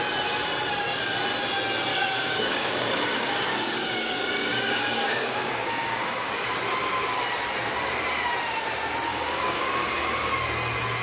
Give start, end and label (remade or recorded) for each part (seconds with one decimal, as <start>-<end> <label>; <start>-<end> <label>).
0.0-1.9 recorded; 1.9-6.3 remade; 6.3-9.1 recorded; 9.1-10.3 remade; 10.3-11.0 recorded